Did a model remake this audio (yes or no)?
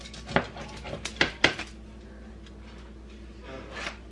no